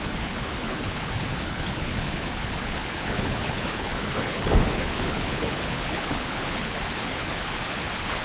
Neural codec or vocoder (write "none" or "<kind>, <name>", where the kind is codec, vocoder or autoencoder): codec, HILCodec